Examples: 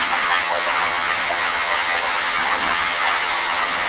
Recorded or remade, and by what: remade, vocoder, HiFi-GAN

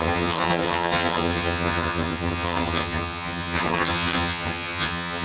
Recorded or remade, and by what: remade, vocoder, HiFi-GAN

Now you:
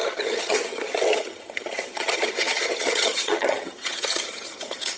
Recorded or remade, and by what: remade, vocoder, HiFi-GAN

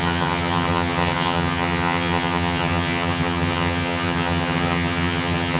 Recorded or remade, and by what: remade, vocoder, HiFi-GAN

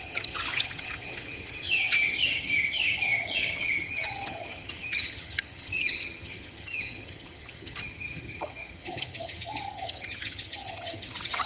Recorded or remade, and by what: remade, vocoder, HiFi-GAN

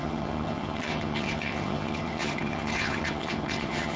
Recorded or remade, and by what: remade, vocoder, HiFi-GAN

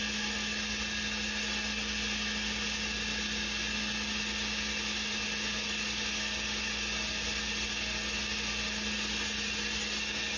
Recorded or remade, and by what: recorded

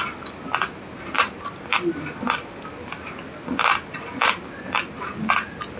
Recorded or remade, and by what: recorded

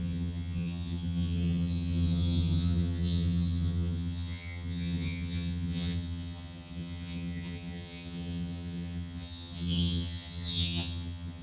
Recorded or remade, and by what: remade, vocoder, HiFi-GAN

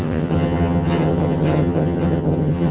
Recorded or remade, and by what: remade, vocoder, HiFi-GAN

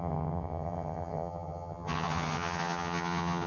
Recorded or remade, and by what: remade, vocoder, HiFi-GAN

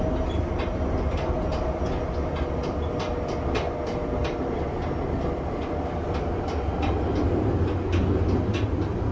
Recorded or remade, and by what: recorded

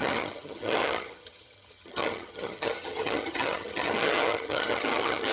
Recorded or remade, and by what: remade, vocoder, HiFi-GAN